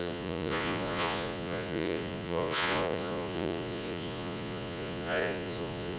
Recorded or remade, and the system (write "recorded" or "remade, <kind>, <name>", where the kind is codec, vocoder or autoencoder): remade, vocoder, Vocos